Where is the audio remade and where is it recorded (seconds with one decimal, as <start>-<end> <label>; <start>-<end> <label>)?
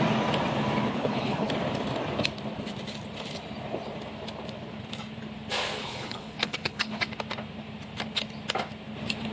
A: 0.0-0.9 recorded; 0.9-1.5 remade; 1.5-5.8 recorded; 5.8-7.0 remade; 7.0-9.3 recorded